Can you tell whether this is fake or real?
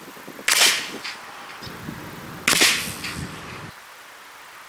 real